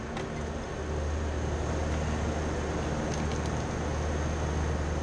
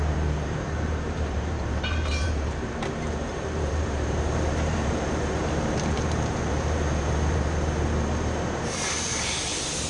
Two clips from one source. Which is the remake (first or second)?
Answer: second